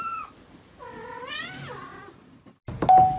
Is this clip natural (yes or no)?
yes